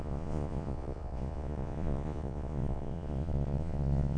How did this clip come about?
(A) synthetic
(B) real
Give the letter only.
A